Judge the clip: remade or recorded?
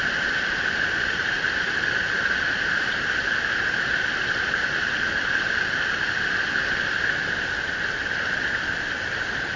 recorded